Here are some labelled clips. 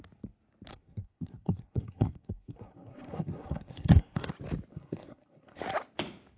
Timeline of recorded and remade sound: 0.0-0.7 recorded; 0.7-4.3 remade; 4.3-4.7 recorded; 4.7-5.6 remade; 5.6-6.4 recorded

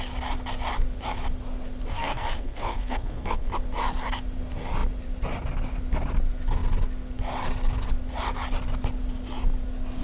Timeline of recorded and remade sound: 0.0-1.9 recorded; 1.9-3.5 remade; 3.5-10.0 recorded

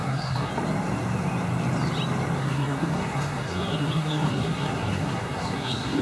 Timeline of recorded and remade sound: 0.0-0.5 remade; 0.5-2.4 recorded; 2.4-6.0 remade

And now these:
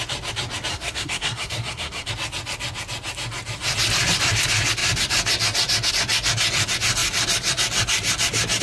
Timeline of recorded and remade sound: 0.0-0.7 recorded; 0.7-2.1 remade; 2.1-8.6 recorded

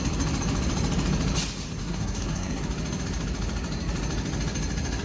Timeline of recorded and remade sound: 0.0-1.8 recorded; 1.8-2.6 remade; 2.6-5.0 recorded

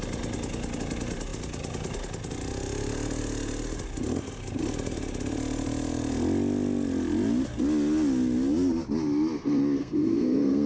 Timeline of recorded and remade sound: 0.0-9.8 recorded; 9.8-10.7 remade

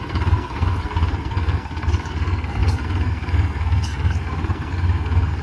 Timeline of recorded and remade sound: 0.0-5.4 remade